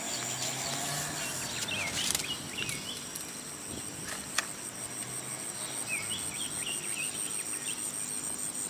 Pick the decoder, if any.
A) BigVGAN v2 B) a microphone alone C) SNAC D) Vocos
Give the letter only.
B